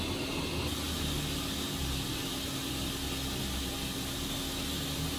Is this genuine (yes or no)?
yes